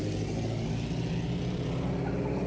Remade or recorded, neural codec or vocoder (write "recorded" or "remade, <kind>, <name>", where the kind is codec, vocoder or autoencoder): recorded